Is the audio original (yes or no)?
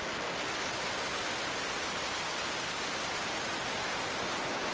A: yes